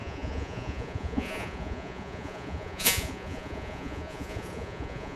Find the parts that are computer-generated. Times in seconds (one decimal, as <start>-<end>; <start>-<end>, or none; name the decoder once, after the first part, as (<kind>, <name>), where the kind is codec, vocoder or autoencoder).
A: 0.0-5.2 (vocoder, Vocos)